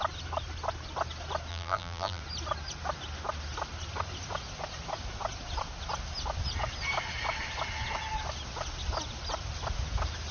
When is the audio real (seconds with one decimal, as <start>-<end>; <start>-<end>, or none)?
0.0-1.5; 2.2-10.3